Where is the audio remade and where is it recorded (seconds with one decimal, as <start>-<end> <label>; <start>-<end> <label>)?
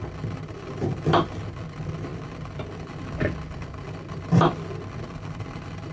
0.0-5.9 recorded